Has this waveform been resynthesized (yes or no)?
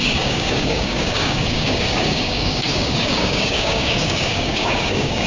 yes